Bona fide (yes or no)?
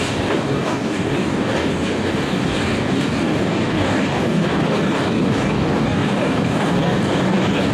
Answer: no